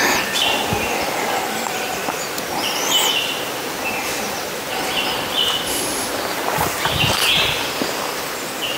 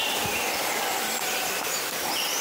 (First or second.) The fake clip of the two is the second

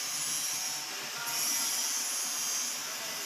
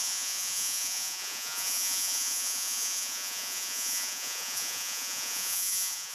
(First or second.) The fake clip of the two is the second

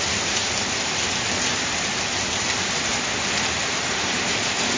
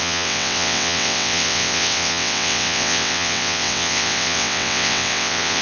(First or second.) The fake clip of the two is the second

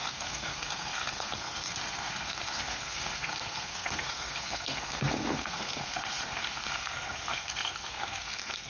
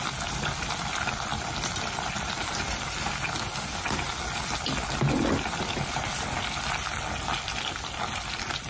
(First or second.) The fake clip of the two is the first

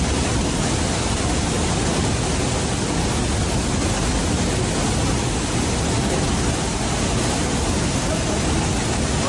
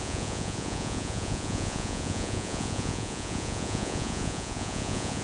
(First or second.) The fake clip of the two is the second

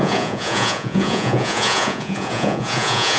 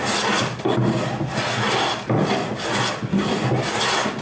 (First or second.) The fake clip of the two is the first